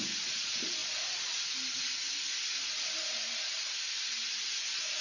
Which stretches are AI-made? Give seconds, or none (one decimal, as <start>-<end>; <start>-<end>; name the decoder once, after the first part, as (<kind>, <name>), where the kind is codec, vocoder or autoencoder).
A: none